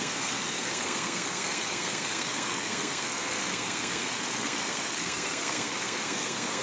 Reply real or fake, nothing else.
fake